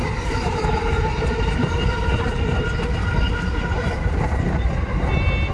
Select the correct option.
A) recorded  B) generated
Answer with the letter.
B